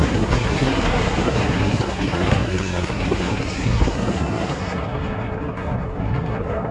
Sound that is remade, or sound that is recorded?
remade